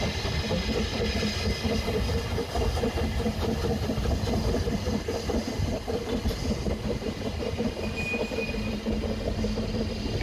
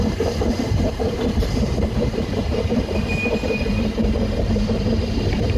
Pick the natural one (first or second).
first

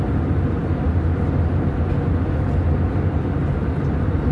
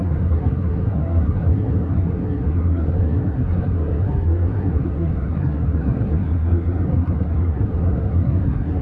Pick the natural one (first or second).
first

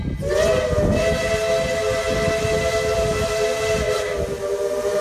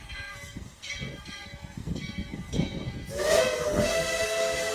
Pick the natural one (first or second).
first